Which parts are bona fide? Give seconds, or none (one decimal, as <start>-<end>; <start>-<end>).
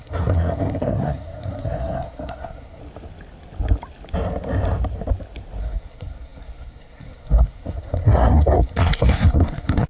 2.8-5.6